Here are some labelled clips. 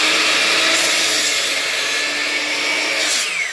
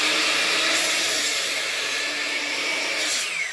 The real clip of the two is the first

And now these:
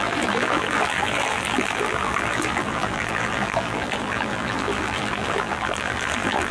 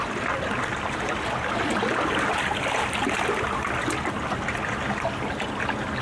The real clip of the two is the second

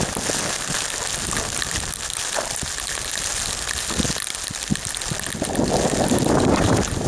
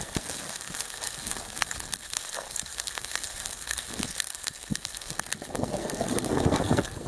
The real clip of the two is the first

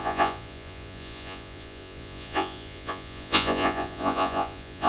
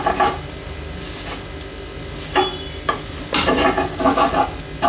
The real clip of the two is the second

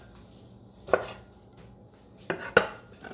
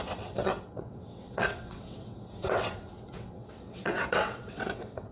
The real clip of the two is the first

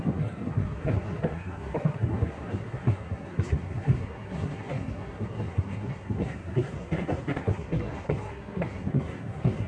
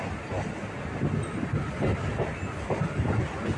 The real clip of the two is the second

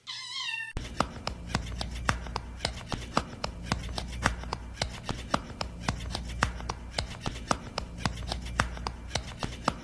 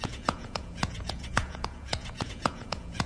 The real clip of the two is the first